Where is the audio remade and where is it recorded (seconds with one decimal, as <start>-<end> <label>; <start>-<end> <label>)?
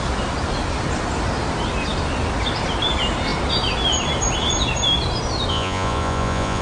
0.0-5.5 recorded; 5.5-6.6 remade